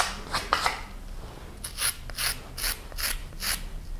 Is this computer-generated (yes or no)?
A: no